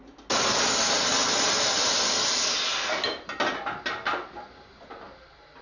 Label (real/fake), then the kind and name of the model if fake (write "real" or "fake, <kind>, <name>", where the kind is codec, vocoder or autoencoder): real